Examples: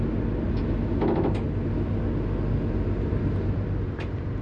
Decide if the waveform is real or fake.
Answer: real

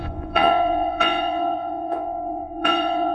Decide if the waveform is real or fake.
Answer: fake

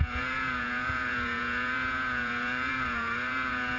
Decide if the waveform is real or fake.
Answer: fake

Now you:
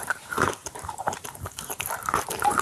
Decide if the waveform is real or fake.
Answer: fake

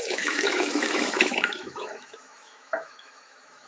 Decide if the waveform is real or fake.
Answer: fake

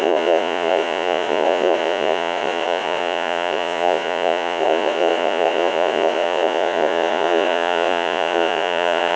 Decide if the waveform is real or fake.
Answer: fake